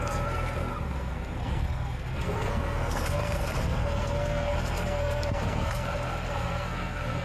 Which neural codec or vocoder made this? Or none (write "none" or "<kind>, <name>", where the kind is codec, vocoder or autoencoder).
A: codec, SNAC